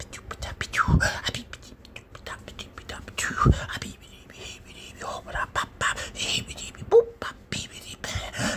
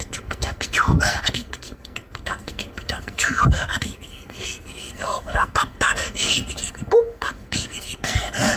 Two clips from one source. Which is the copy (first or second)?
second